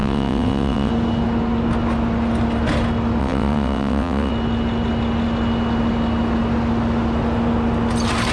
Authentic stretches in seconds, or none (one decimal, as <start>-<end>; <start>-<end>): 0.9-3.2; 4.3-8.3